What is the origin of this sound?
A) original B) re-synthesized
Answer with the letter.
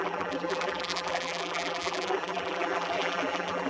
B